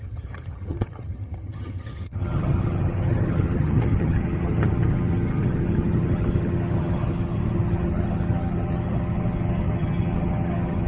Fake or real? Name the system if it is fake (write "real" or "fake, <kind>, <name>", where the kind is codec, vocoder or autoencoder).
fake, vocoder, HiFi-GAN